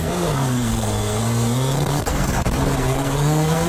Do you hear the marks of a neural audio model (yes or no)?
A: yes